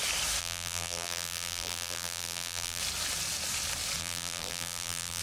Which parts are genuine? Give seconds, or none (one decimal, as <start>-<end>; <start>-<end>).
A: 0.0-0.4; 2.8-4.0